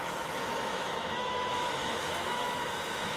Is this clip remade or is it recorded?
remade